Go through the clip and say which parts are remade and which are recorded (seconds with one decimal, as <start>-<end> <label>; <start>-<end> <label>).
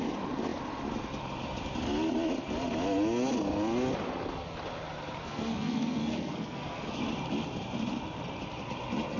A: 0.0-5.2 recorded; 5.2-7.0 remade; 7.0-9.2 recorded